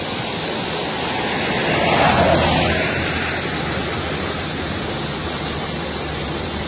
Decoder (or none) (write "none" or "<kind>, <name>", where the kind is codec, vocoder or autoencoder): none